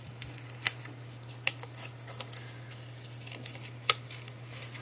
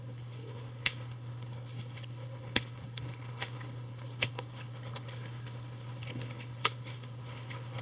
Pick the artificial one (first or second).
second